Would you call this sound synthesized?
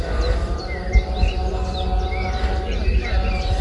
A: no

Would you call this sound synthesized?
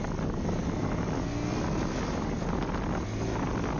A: no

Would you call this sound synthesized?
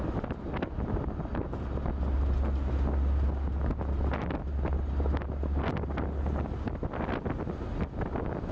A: no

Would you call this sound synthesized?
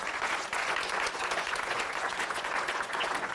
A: yes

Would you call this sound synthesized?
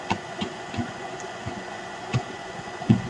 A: yes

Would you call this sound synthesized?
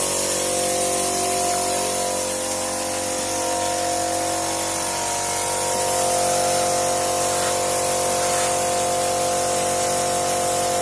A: no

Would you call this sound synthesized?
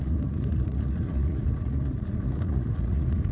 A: yes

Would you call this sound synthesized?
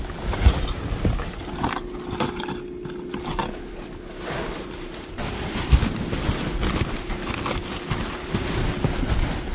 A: no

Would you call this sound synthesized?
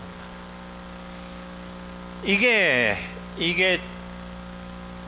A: no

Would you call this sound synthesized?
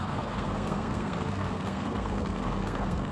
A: yes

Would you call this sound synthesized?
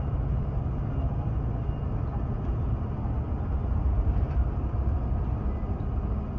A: no